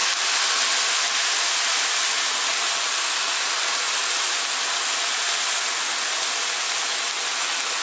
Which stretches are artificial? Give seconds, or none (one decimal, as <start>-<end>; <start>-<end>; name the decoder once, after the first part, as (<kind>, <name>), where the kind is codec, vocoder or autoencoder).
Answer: none